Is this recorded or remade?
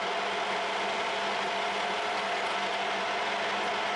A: recorded